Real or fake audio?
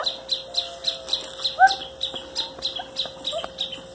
real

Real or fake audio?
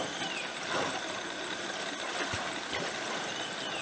real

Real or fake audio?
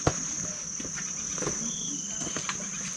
real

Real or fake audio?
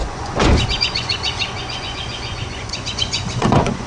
fake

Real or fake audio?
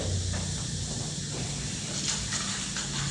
real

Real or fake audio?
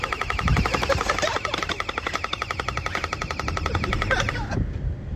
real